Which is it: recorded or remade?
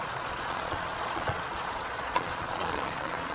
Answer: remade